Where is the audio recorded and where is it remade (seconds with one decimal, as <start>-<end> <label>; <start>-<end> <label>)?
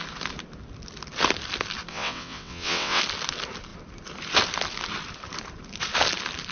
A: 0.0-1.9 recorded; 1.9-3.0 remade; 3.0-6.5 recorded